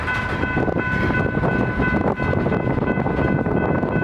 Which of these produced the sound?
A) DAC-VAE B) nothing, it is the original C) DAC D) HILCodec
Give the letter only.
B